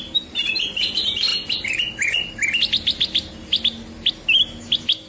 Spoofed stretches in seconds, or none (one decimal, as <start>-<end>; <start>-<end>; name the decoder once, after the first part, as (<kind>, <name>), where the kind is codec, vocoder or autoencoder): none

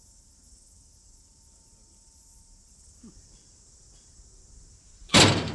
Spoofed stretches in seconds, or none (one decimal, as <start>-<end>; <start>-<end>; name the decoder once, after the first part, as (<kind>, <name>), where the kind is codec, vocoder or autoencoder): 0.0-5.5 (vocoder, BigVGAN v2)